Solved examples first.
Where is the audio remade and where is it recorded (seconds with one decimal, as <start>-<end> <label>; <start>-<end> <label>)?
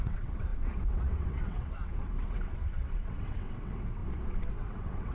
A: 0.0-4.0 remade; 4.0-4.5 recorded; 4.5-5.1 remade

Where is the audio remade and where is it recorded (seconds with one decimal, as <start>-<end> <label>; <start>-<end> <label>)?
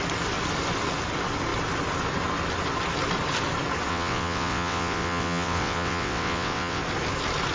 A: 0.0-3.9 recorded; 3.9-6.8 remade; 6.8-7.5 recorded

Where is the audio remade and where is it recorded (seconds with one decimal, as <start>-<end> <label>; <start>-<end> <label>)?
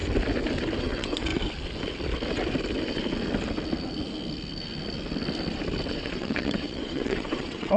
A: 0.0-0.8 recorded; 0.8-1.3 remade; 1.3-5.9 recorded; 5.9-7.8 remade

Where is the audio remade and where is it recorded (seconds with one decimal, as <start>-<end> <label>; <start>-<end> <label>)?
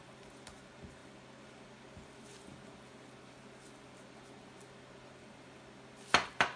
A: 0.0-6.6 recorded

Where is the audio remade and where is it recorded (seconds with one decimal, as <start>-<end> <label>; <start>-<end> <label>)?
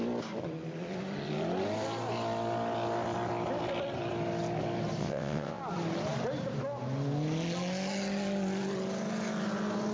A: 0.0-5.0 recorded; 5.0-5.6 remade; 5.6-9.9 recorded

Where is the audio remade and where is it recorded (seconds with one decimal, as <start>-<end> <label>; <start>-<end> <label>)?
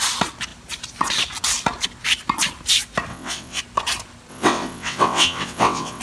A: 0.0-3.1 recorded; 3.1-3.6 remade; 3.6-4.3 recorded; 4.3-6.0 remade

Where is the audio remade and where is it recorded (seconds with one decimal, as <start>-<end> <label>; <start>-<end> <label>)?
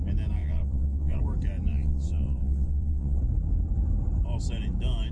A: 0.0-0.4 recorded; 0.4-1.2 remade; 1.2-1.7 recorded; 1.7-3.2 remade; 3.2-5.1 recorded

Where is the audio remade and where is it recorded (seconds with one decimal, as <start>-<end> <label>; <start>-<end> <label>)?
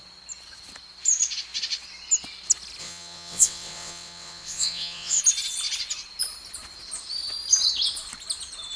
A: 0.0-2.8 recorded; 2.8-5.2 remade; 5.2-8.8 recorded